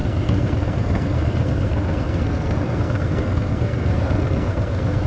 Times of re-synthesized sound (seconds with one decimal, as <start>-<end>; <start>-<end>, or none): 0.0-5.1